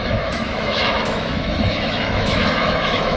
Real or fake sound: fake